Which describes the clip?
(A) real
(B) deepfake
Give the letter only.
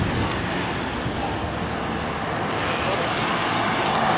A